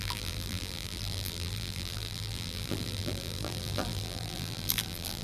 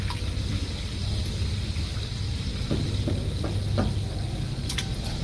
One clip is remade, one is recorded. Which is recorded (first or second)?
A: second